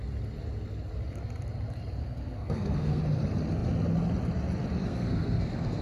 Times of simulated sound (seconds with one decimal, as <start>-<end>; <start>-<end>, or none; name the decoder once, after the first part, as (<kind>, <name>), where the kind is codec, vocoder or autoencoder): 2.0-3.0 (codec, SNAC); 4.8-5.8